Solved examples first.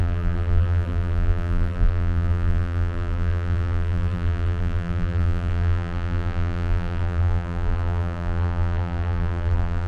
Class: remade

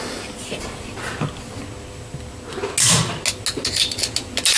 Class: recorded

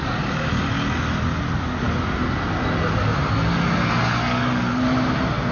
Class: recorded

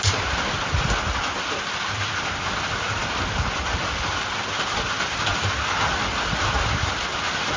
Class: recorded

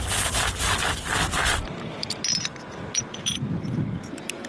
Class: recorded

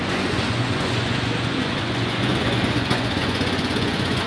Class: remade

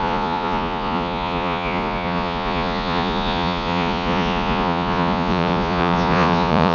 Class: remade